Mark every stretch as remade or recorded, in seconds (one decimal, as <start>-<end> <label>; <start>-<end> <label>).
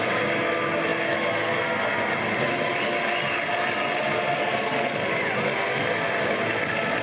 0.0-7.0 recorded